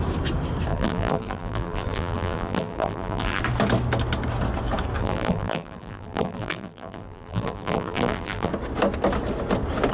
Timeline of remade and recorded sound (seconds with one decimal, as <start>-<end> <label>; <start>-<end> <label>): 0.0-0.7 recorded; 0.7-3.4 remade; 3.4-5.0 recorded; 5.0-8.5 remade; 8.5-9.9 recorded